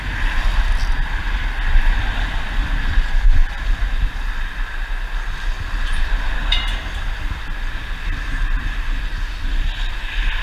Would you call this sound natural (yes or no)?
yes